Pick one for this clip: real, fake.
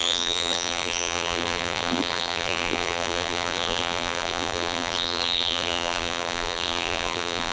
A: fake